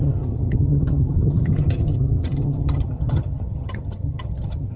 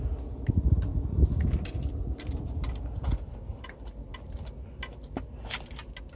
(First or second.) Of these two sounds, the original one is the second